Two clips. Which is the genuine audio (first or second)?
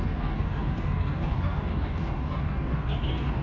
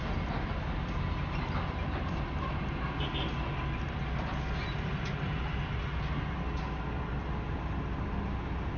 second